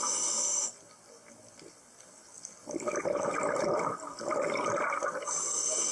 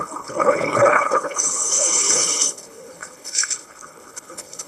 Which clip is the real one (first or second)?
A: first